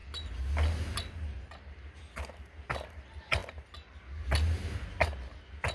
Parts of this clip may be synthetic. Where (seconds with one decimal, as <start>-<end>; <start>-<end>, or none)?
none